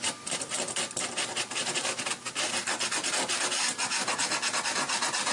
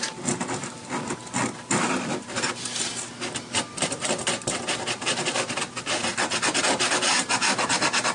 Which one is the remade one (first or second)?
second